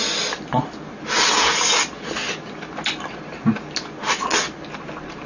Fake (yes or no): no